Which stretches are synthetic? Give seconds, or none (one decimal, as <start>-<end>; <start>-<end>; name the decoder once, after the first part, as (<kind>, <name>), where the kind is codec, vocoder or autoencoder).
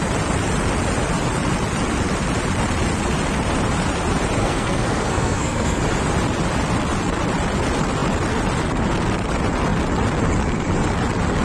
4.4-5.8 (codec, SNAC)